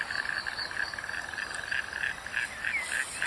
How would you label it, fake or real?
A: real